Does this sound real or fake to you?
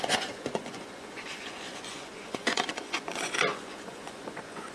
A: fake